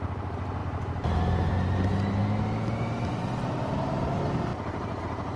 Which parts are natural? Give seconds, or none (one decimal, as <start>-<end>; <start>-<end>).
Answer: 0.0-5.4

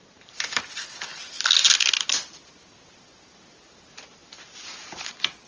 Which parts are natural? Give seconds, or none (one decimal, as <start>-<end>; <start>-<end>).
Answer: 0.0-5.5

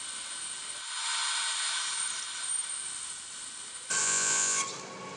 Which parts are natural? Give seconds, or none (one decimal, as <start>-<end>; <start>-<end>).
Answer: 0.0-4.0; 4.6-5.2

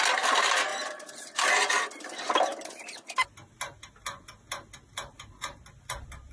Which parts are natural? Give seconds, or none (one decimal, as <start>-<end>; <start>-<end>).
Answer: 0.0-6.3